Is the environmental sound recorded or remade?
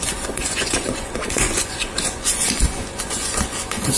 remade